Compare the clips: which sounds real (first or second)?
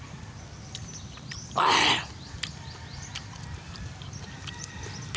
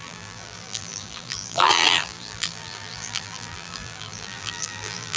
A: first